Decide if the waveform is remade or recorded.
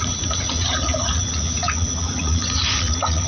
remade